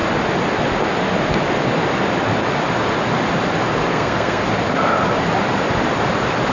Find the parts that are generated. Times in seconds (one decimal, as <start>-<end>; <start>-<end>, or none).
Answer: 3.9-4.4